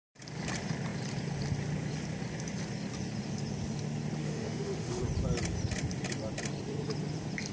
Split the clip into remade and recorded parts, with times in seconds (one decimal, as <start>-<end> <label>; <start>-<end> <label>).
0.0-4.2 recorded; 4.2-5.0 remade; 5.0-7.5 recorded